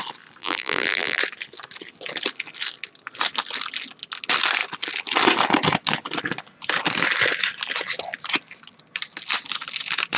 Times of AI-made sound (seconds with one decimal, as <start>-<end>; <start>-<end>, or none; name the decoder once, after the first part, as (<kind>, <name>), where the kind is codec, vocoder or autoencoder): 0.4-1.2 (vocoder, BigVGAN v2)